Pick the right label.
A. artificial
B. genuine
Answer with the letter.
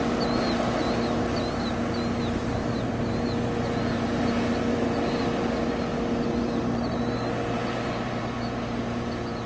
B